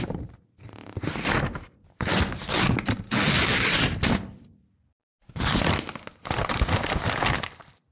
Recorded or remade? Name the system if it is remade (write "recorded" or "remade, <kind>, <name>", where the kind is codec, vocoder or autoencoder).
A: recorded